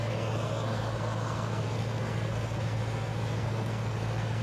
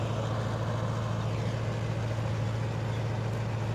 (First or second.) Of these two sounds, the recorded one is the second